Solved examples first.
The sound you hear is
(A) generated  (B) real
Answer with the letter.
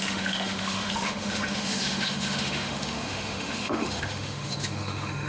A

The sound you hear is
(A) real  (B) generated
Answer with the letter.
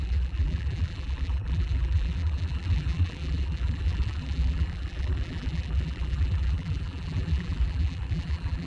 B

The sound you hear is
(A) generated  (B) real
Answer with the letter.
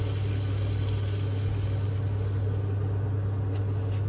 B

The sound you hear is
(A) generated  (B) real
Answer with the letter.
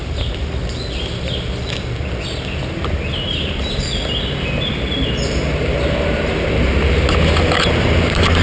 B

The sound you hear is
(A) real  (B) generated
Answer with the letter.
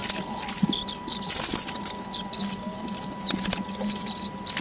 A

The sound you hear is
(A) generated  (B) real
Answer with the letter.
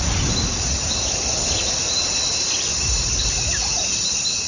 B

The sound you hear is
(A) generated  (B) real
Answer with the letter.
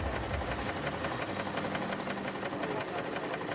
B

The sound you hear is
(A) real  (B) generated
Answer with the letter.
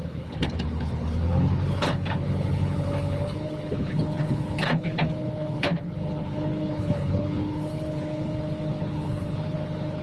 B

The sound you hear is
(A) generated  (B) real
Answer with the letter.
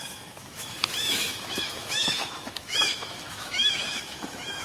A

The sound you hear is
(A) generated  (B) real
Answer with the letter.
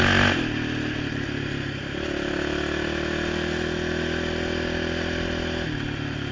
B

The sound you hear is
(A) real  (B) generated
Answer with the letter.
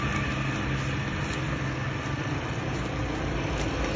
A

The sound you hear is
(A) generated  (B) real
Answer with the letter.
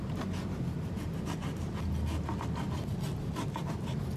B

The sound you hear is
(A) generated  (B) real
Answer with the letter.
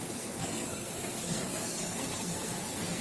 A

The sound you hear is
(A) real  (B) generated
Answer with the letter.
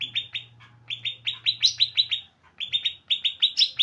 A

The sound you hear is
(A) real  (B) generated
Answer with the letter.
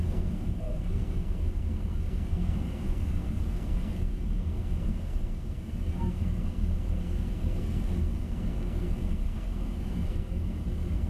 B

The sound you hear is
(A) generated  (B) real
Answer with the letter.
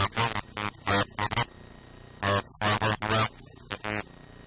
B